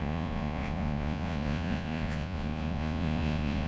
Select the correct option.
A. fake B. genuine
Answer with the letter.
A